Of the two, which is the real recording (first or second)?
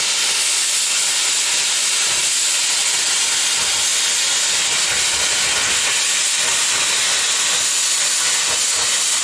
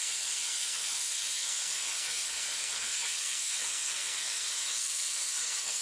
first